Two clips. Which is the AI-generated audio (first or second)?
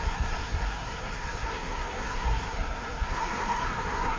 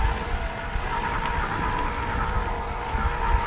first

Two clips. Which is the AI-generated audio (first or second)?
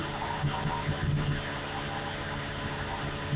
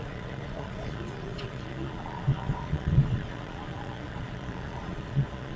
second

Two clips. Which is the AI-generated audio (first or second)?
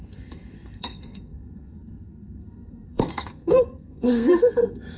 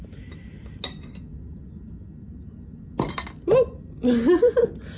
first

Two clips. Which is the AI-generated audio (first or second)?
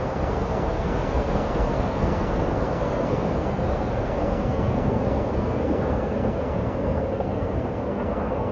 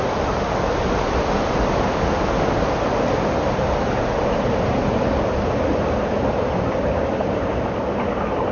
first